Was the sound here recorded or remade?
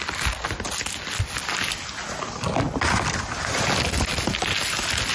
recorded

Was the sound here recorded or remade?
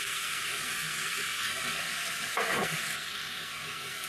remade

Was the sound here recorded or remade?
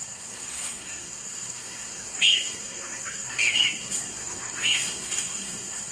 remade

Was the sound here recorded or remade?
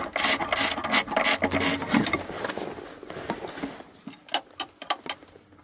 recorded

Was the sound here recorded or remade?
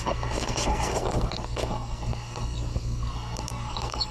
remade